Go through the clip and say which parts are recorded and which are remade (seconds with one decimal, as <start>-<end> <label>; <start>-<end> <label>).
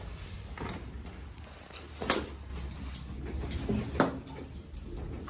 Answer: 0.0-5.3 recorded